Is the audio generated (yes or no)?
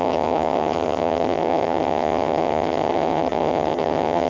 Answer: yes